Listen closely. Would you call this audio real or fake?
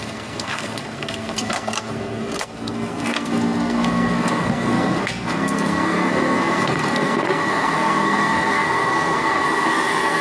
fake